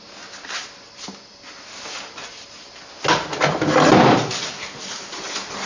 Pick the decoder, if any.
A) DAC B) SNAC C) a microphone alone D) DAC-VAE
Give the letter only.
C